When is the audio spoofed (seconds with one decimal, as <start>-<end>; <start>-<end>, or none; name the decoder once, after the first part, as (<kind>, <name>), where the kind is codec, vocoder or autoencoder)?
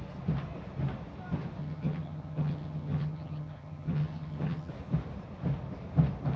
1.6-4.7 (vocoder, HiFi-GAN)